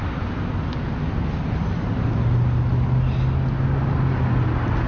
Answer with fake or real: real